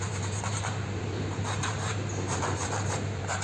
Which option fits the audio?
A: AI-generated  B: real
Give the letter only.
A